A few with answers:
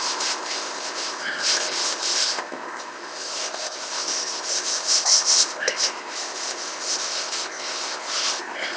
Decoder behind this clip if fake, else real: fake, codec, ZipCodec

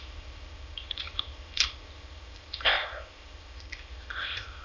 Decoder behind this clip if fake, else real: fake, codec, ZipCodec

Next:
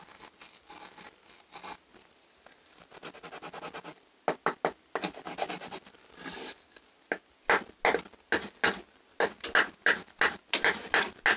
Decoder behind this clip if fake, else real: real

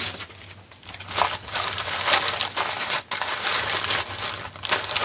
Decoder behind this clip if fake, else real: real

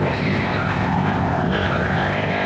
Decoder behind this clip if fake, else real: fake, codec, ZipCodec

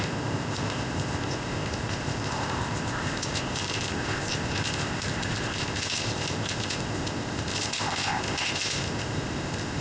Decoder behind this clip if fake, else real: fake, codec, ZipCodec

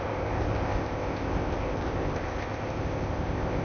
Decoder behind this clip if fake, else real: fake, codec, ZipCodec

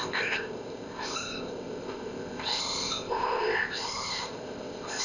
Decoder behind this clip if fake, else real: fake, codec, ZipCodec